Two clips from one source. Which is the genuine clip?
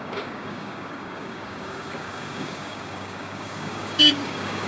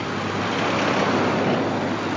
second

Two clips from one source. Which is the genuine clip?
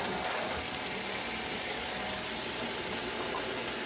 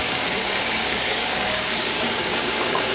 first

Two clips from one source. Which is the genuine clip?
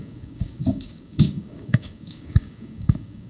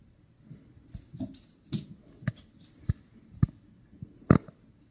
second